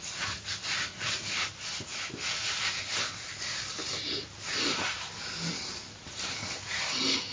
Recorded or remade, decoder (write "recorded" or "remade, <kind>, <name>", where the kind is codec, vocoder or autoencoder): recorded